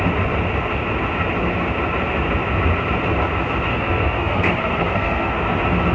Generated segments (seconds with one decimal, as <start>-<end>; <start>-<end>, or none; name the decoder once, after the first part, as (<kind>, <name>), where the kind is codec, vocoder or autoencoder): 3.7-5.4 (codec, SNAC)